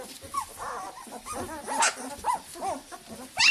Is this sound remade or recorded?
recorded